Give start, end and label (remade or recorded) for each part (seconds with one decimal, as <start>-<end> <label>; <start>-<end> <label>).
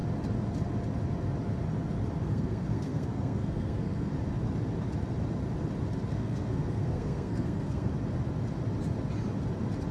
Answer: 0.0-2.2 recorded; 2.2-4.1 remade; 4.1-6.1 recorded; 6.1-7.9 remade; 7.9-9.9 recorded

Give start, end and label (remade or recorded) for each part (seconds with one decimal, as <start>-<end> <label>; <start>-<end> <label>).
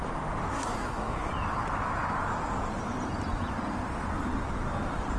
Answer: 0.0-0.5 recorded; 0.5-1.3 remade; 1.3-5.2 recorded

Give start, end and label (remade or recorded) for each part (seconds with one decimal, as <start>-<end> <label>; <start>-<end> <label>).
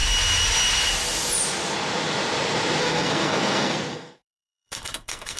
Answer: 0.0-2.8 recorded; 2.8-5.4 remade